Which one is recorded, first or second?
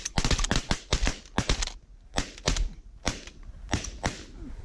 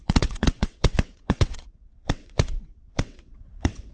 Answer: first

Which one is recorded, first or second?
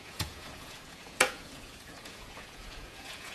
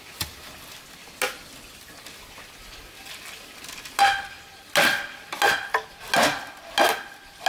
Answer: second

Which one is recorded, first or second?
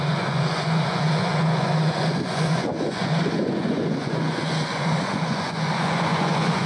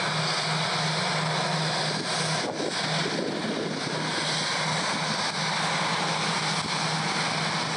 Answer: second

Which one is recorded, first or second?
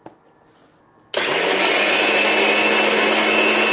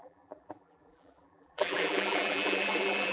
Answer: first